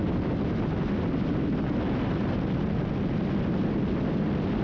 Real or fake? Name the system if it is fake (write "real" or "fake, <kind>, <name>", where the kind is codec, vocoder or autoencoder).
real